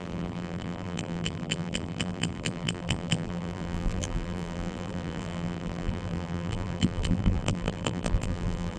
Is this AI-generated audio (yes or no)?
yes